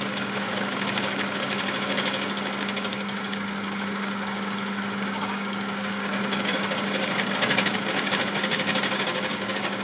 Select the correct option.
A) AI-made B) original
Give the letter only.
A